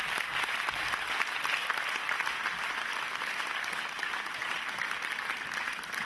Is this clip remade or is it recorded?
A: recorded